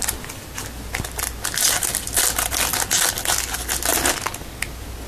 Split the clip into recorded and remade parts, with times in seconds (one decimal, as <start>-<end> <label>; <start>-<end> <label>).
0.0-5.1 recorded